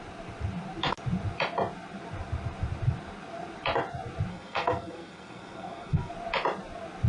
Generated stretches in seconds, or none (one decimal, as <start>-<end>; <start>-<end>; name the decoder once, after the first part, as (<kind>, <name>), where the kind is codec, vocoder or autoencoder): 4.3-6.1 (codec, SNAC)